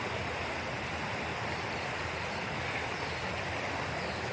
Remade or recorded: recorded